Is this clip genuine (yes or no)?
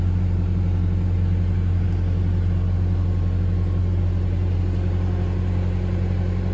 yes